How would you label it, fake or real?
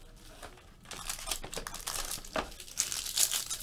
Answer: real